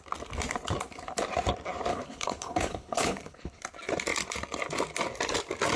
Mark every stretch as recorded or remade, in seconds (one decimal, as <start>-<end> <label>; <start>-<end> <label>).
0.0-1.9 recorded; 1.9-3.6 remade; 3.6-5.8 recorded